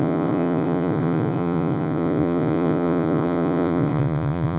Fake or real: fake